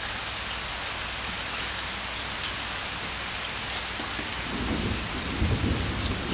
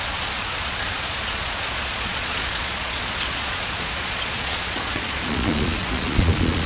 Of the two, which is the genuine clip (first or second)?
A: first